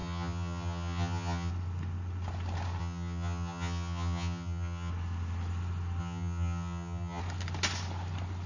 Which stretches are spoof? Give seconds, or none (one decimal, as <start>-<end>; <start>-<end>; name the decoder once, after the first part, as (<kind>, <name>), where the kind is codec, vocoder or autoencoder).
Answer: 0.0-1.5 (vocoder, HiFi-GAN); 2.8-4.9; 6.0-7.2